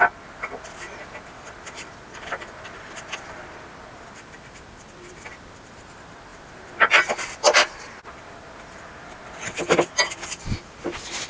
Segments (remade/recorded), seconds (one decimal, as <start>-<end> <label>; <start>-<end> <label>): 0.0-11.3 recorded